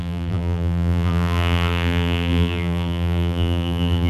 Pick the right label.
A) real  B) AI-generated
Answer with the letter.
B